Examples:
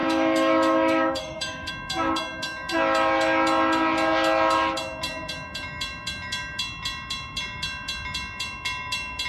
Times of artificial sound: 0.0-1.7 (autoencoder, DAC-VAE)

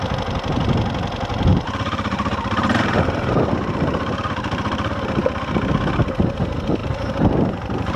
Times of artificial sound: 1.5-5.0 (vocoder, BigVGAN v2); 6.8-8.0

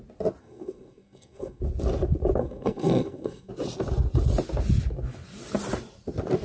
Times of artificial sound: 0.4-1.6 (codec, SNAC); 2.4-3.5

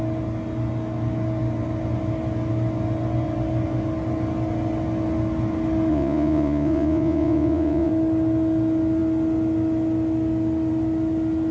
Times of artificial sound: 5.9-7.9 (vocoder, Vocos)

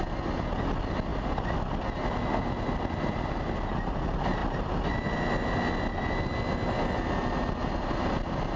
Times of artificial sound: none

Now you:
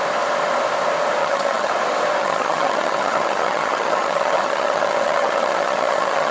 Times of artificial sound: 1.2-1.7 (vocoder, HiFi-GAN); 2.2-6.3